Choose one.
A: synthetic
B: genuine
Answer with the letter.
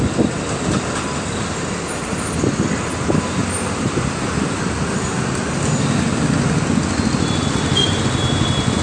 B